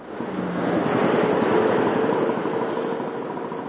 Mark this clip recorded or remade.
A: recorded